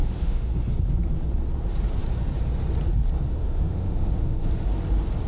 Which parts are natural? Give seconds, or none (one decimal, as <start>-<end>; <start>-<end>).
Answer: 0.5-3.4; 4.4-5.3